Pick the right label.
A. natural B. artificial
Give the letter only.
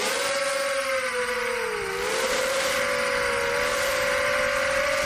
A